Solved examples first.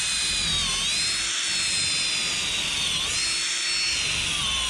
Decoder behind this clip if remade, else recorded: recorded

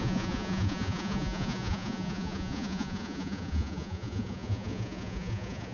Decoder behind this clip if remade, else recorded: remade, vocoder, Vocos